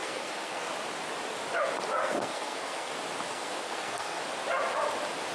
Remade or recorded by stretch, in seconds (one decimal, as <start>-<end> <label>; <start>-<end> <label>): 0.0-0.7 remade; 0.7-2.0 recorded; 2.0-2.9 remade; 2.9-3.3 recorded; 3.3-4.2 remade; 4.2-5.3 recorded